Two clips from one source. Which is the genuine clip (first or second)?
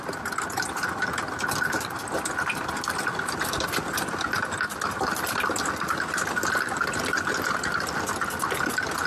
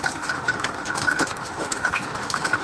first